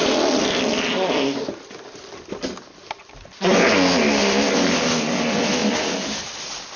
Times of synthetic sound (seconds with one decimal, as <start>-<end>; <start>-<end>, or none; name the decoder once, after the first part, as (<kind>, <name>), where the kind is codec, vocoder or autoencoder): none